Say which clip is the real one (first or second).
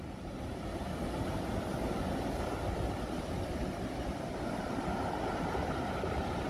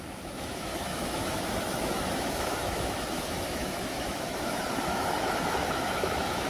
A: first